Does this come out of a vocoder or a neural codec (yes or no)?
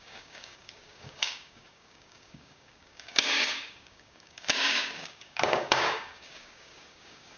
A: yes